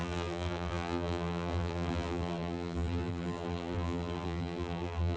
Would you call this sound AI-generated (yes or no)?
yes